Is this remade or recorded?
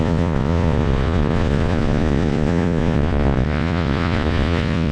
remade